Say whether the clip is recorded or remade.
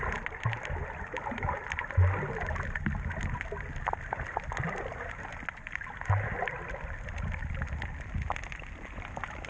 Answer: recorded